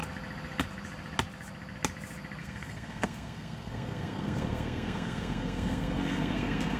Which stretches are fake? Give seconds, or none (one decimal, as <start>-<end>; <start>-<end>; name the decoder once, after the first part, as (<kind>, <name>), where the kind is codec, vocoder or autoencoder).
2.4-6.8 (codec, SNAC)